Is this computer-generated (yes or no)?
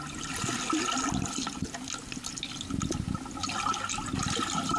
no